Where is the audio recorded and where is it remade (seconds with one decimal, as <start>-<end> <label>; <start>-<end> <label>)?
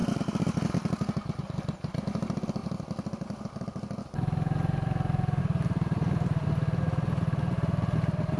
0.0-8.4 recorded